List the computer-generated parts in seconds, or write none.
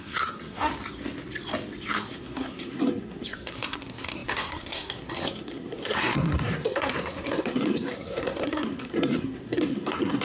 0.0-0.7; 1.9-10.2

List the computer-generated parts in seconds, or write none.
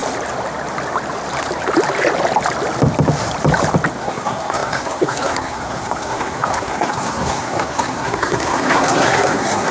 4.0-9.7